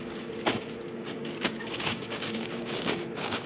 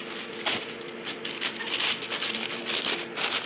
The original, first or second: second